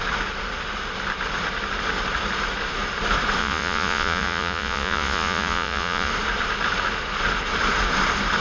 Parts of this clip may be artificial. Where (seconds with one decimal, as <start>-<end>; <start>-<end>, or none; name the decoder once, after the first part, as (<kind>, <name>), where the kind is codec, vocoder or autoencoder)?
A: 3.4-6.1 (vocoder, Vocos)